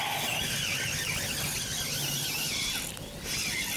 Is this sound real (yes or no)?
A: yes